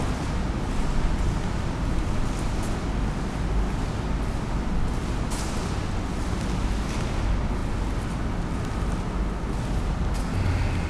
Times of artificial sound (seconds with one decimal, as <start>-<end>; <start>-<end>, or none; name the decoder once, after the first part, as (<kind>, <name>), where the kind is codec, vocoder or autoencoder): none